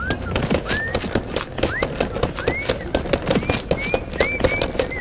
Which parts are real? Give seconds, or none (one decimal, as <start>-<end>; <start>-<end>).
0.0-5.0